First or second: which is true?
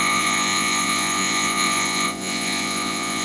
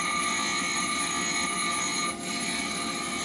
second